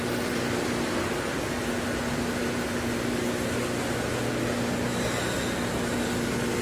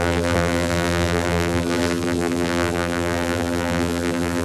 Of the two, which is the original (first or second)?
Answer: first